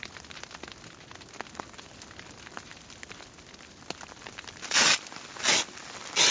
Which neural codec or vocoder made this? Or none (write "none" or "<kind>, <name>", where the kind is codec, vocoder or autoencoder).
none